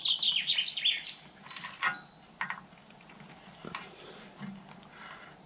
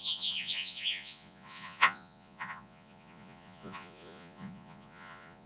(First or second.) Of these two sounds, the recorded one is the first